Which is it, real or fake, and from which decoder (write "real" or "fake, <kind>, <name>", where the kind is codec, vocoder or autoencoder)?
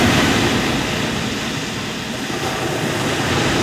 real